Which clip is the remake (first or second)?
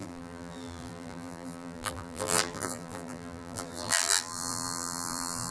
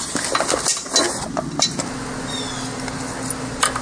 first